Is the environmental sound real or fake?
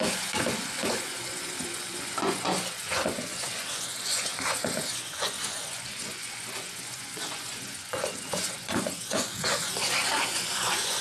fake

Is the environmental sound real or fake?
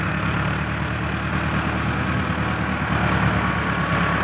real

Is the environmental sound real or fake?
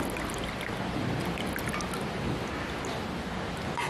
real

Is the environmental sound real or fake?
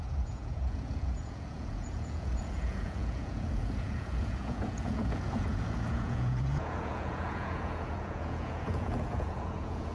fake